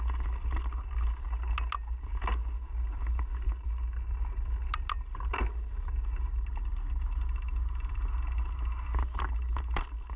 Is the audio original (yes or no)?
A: yes